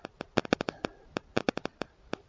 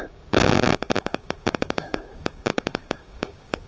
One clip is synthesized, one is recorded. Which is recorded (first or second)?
first